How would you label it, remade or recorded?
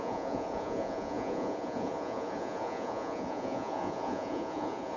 remade